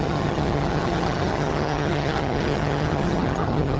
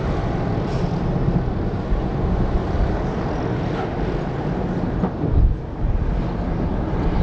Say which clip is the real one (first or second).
second